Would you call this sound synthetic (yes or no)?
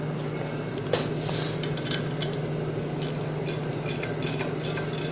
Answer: no